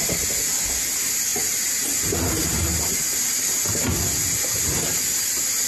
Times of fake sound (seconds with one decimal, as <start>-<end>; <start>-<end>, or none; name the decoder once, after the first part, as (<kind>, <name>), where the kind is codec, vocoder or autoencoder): none